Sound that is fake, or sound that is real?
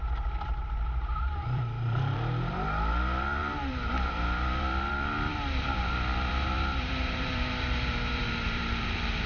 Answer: fake